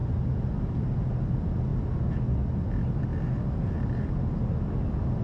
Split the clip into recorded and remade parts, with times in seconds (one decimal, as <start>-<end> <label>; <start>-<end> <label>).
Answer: 0.0-5.2 recorded